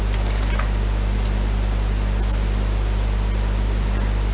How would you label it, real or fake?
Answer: real